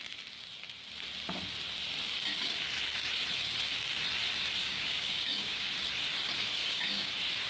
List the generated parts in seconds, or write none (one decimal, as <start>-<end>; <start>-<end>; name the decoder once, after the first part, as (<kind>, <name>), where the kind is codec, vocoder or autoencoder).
4.6-5.7 (codec, DAC); 6.6-7.1